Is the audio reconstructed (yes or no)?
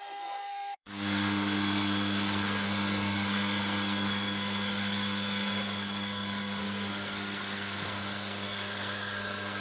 yes